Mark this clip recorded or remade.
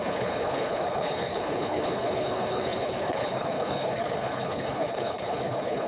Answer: remade